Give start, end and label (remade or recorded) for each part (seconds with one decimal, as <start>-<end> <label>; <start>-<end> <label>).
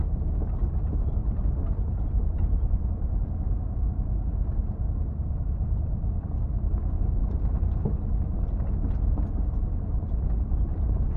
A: 0.0-1.2 recorded; 1.2-2.1 remade; 2.1-5.6 recorded; 5.6-6.7 remade; 6.7-11.2 recorded